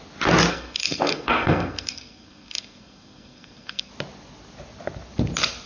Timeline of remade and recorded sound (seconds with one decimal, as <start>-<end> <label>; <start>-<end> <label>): 0.0-0.5 recorded; 0.5-3.9 remade; 3.9-5.7 recorded